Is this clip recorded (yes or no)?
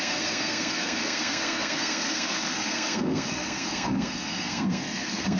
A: no